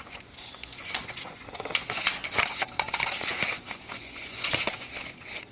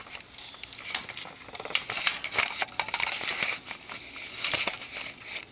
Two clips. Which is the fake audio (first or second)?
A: first